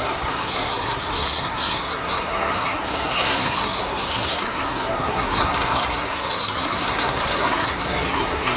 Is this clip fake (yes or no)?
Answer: yes